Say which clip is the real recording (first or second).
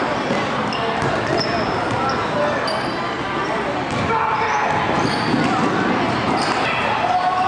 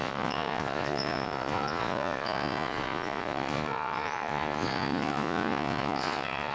first